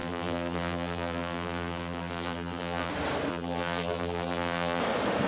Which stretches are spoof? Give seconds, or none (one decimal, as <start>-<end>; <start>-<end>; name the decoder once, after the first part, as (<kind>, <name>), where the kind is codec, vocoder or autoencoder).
0.0-2.9 (vocoder, BigVGAN v2); 3.3-4.8